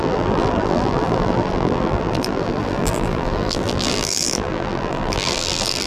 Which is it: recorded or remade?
remade